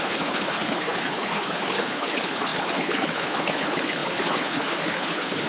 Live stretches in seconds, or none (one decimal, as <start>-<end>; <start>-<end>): none